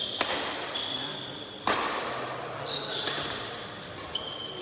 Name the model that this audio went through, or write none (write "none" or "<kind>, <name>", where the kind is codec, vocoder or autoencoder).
none